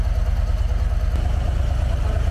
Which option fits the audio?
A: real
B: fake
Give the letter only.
A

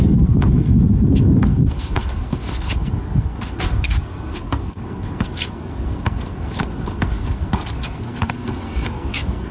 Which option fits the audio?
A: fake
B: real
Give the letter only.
A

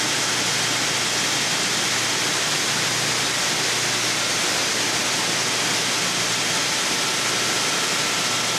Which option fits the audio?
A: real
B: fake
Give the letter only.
A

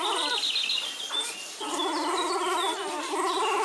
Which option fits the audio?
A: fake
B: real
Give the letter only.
B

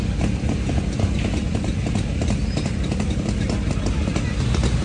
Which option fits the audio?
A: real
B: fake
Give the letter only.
A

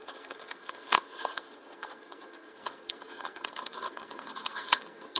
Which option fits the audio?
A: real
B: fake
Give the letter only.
B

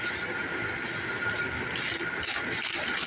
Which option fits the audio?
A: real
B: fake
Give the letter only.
A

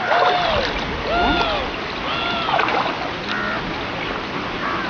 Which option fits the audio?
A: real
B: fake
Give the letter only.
A